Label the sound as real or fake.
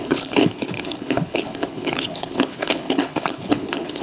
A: fake